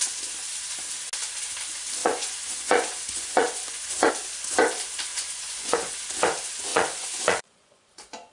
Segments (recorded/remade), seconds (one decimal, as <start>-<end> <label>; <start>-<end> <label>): 0.0-2.0 recorded; 2.0-4.1 remade; 4.1-5.1 recorded; 5.1-5.9 remade; 5.9-6.7 recorded; 6.7-8.3 remade